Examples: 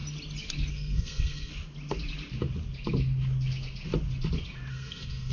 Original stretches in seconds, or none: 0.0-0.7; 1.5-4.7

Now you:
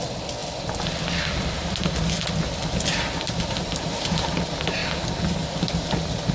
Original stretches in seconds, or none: 0.0-6.3

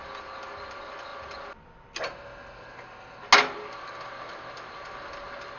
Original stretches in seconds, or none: 0.0-5.6